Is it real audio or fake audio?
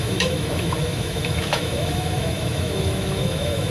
fake